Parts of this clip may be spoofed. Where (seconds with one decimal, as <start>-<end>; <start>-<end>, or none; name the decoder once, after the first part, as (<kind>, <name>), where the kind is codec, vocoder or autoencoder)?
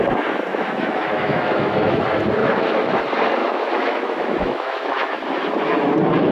0.5-2.0 (autoencoder, DAC-VAE); 2.4-3.0; 3.4-5.2